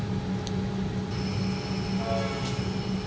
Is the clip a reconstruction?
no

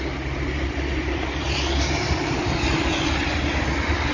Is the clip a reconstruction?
no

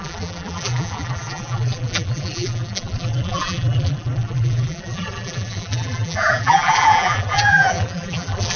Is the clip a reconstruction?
yes